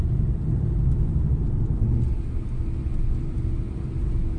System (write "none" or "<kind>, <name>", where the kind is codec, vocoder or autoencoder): none